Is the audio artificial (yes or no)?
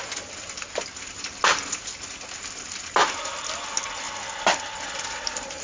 no